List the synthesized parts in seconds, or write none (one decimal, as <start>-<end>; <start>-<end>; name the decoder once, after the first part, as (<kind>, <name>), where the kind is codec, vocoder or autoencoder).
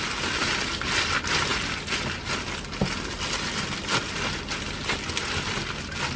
none